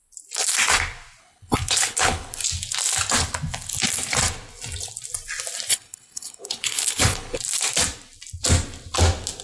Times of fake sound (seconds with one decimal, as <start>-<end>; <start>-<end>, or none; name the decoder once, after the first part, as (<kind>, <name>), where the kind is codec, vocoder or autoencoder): 1.2-2.3 (codec, HILCodec); 5.7-7.4